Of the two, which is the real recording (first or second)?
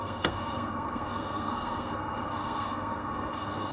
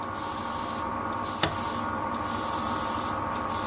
second